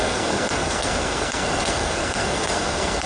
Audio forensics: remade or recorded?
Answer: remade